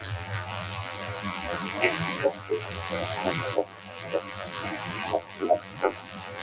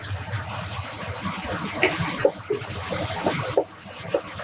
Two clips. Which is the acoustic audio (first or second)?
second